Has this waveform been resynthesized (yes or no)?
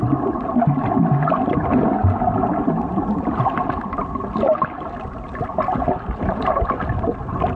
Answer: no